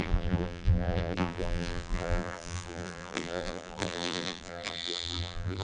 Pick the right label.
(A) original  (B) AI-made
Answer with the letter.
B